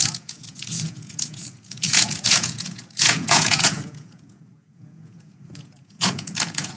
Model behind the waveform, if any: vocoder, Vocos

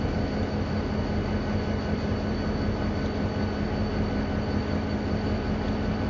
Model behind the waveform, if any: none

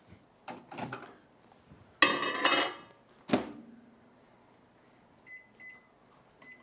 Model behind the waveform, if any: none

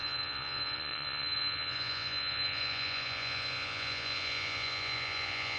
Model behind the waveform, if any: vocoder, Vocos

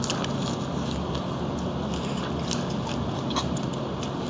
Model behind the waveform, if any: none